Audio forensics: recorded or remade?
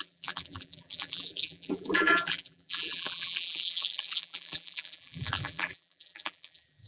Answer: remade